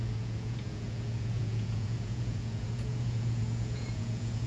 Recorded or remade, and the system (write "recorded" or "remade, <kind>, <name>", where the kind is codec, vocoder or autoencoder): remade, vocoder, Vocos